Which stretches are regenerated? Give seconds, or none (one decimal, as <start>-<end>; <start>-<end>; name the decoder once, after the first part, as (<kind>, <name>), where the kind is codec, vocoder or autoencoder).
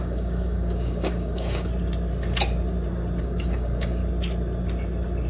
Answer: 0.0-1.7 (codec, DAC); 3.2-4.0